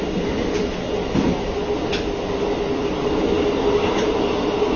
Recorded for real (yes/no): yes